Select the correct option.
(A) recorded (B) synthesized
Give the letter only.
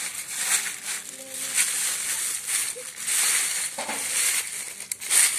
A